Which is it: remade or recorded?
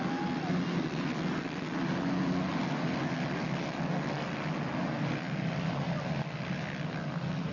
recorded